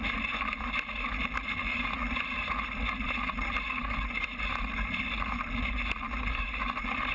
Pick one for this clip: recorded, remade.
recorded